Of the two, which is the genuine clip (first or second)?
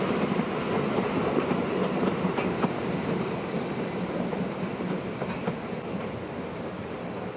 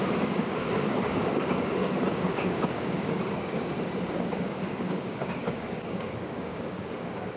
first